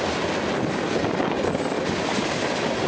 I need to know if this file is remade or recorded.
recorded